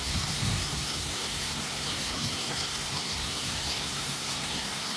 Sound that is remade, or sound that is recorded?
remade